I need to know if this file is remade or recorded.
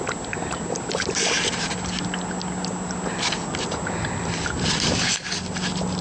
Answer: recorded